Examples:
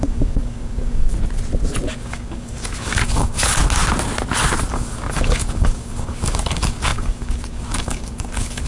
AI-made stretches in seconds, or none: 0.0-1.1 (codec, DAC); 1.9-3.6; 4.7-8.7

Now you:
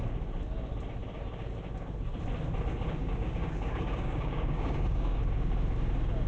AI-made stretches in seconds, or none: 3.0-5.2 (codec, DAC)

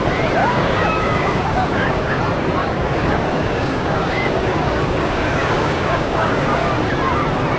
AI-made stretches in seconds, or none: 0.4-2.2 (codec, DAC); 2.6-6.7